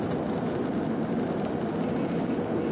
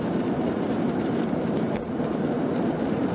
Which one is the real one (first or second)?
first